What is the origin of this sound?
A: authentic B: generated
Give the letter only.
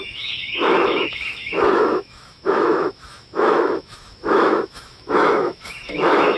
B